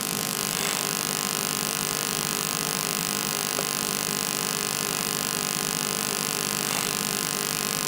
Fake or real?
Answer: real